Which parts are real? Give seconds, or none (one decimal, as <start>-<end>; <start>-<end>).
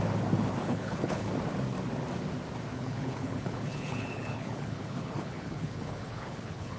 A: 0.0-0.6; 1.3-2.7